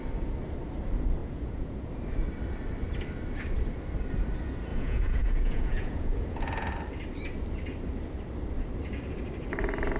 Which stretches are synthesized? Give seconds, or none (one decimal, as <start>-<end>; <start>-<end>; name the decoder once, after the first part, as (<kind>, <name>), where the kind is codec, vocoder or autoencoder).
1.2-1.9 (vocoder, Vocos); 4.7-6.7